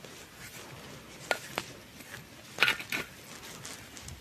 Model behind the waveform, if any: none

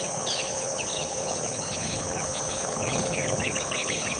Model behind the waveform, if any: codec, HILCodec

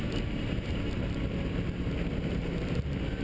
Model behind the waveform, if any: none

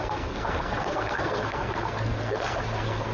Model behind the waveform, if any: codec, SNAC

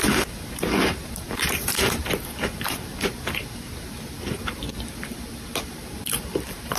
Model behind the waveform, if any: vocoder, BigVGAN v2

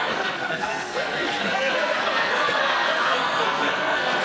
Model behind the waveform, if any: codec, SNAC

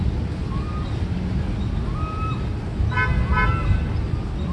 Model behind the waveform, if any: none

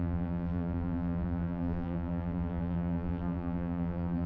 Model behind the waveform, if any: vocoder, BigVGAN v2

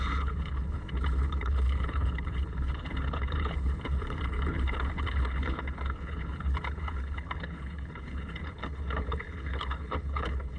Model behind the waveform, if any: codec, HILCodec